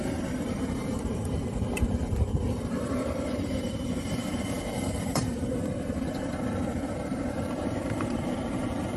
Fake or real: fake